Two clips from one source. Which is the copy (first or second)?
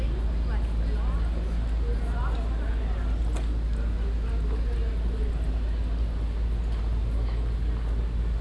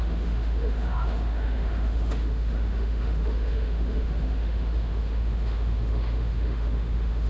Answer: second